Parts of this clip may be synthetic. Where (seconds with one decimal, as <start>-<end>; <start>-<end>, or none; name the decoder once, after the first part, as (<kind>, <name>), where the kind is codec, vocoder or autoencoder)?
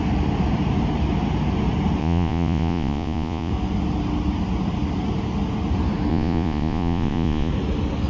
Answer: 2.0-3.5 (vocoder, Vocos); 6.1-7.5